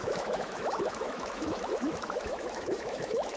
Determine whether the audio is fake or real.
fake